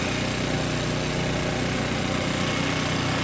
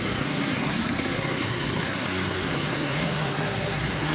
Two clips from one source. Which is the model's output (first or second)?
second